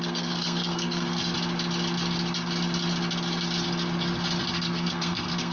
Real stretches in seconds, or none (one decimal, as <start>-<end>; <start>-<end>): 1.2-4.5